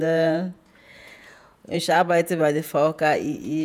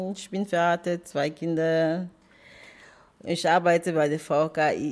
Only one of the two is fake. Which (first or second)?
first